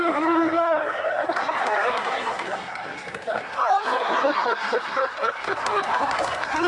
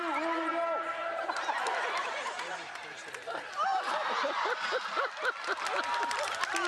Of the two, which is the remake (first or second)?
first